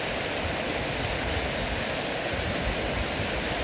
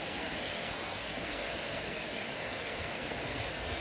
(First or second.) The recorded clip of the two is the first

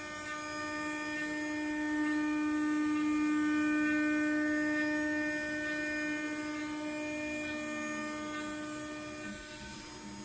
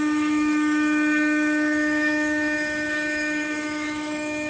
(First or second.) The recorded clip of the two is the first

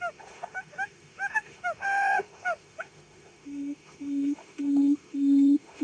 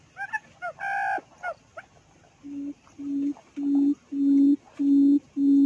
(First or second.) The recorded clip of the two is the second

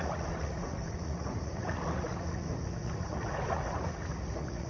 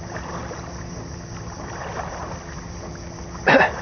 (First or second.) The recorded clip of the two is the second